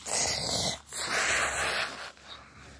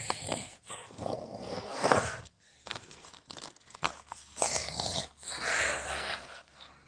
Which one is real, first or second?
first